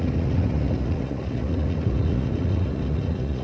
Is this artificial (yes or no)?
yes